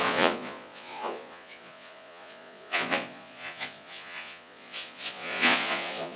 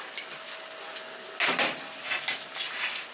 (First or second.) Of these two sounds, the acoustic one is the second